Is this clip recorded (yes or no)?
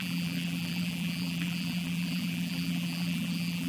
no